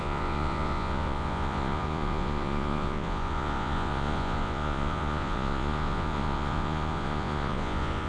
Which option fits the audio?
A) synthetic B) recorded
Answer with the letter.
A